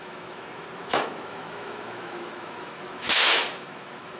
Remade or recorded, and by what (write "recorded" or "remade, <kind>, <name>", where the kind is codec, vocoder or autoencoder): remade, autoencoder, DAC-VAE